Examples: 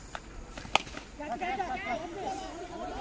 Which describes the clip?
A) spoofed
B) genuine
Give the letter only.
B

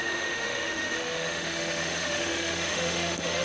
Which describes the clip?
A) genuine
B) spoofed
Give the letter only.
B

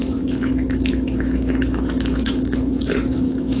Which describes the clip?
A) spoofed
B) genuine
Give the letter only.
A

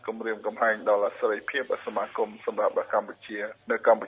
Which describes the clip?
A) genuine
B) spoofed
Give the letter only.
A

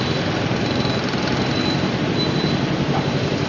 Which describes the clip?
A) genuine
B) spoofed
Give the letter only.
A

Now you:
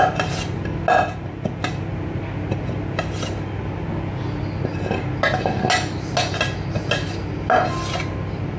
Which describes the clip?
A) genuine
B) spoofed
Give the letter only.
A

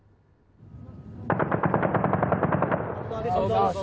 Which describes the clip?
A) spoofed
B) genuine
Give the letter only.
B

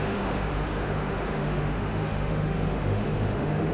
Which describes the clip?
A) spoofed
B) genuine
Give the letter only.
A